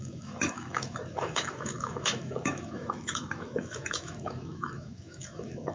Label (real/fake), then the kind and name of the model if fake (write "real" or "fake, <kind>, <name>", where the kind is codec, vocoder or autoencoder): fake, autoencoder, DAC-VAE